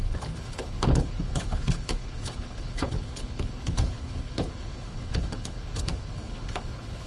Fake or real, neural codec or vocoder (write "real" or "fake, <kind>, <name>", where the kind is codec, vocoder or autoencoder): fake, codec, HILCodec